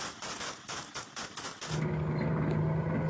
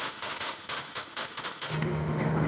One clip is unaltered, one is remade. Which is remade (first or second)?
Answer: second